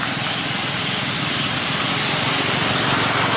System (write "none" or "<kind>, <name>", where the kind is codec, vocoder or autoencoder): none